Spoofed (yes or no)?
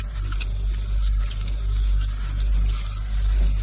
no